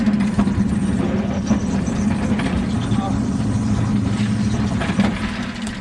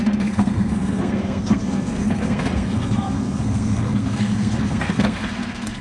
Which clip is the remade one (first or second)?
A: second